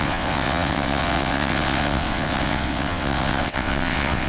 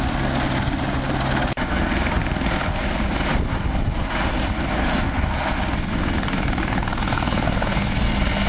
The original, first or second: second